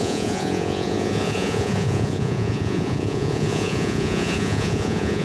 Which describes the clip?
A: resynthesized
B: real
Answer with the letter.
A